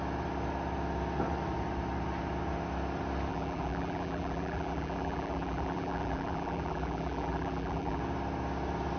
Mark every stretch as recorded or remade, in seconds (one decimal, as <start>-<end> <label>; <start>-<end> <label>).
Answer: 0.0-3.3 recorded; 3.3-8.0 remade; 8.0-9.0 recorded